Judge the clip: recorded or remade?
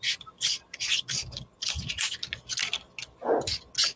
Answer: recorded